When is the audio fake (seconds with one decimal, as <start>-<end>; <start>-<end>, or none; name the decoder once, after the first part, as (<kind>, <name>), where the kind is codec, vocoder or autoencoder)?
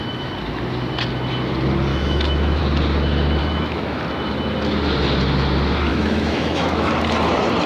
1.9-2.6 (autoencoder, DAC-VAE); 3.4-4.0; 5.9-6.9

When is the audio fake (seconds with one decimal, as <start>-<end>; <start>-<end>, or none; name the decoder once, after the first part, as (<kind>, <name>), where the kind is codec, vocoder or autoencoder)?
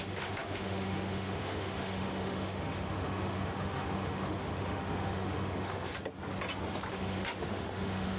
0.0-5.9 (autoencoder, DAC-VAE); 6.9-8.2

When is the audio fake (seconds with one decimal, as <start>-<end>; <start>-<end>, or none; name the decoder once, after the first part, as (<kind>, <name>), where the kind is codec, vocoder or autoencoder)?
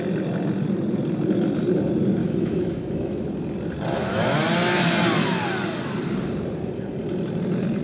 2.2-3.3 (autoencoder, DAC-VAE)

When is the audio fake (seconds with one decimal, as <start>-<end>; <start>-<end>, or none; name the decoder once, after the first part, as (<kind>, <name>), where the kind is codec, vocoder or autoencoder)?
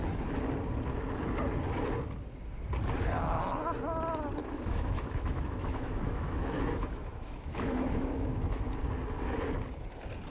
4.4-8.7 (autoencoder, DAC-VAE)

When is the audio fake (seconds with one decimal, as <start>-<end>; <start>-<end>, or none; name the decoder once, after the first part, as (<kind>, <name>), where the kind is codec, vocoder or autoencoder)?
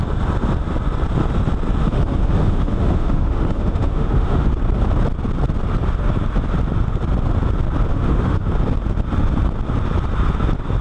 1.8-4.5 (autoencoder, DAC-VAE); 7.9-8.5